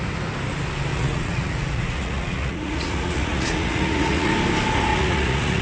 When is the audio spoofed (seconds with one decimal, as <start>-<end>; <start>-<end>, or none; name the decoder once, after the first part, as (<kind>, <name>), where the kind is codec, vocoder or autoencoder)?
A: 0.9-4.3 (vocoder, Vocos); 4.9-5.6